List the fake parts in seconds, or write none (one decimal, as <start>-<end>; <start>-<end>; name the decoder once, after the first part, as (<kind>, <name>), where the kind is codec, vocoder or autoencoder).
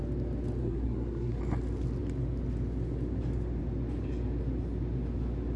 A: 0.6-1.4 (codec, SNAC)